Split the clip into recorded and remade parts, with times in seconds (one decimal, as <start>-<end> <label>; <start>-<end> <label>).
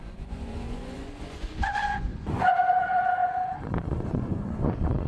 0.0-5.1 remade